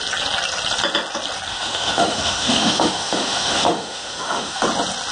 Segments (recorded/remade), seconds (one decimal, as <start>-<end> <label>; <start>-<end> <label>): 0.0-1.5 recorded; 1.5-4.6 remade; 4.6-5.1 recorded